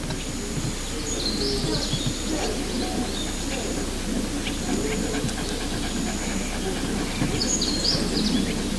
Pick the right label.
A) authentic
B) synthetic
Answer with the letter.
A